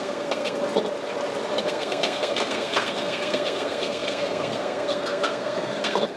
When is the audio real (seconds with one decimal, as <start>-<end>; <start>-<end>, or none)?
0.6-1.6